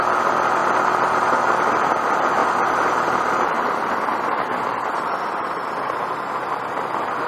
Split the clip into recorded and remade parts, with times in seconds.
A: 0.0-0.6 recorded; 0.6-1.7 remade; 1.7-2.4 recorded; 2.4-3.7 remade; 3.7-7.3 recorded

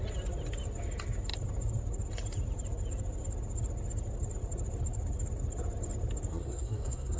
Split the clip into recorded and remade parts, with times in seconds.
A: 0.0-6.3 recorded; 6.3-7.2 remade

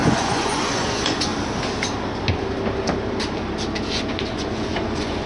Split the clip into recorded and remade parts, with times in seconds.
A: 0.0-1.3 remade; 1.3-3.9 recorded; 3.9-5.3 remade

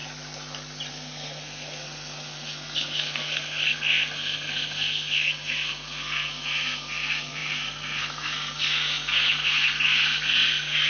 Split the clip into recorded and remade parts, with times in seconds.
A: 0.0-0.9 recorded; 0.9-10.9 remade